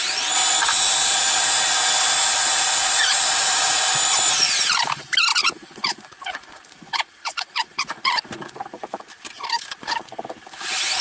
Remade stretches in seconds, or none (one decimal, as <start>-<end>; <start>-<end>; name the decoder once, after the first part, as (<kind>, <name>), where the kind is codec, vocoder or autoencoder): 5.3-9.0 (vocoder, Vocos)